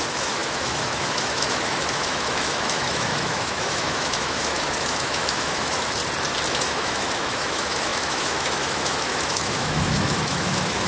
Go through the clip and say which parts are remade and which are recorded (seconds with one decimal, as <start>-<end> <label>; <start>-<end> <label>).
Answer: 0.0-6.0 remade; 6.0-6.5 recorded; 6.5-10.9 remade